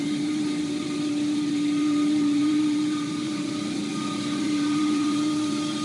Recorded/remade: remade